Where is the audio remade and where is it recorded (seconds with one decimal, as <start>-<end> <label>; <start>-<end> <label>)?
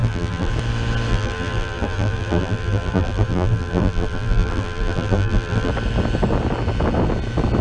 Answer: 0.0-0.5 remade; 0.5-1.1 recorded; 1.1-5.7 remade; 5.7-7.6 recorded